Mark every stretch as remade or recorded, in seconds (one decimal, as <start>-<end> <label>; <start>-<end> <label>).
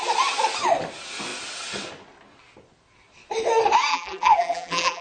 0.0-3.9 recorded; 3.9-5.0 remade